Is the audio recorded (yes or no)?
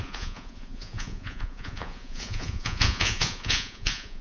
no